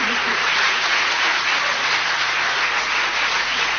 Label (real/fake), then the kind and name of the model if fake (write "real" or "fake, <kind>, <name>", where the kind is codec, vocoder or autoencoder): fake, vocoder, Vocos